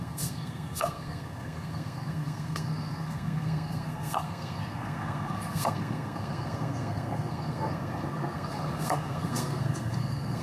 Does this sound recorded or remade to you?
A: remade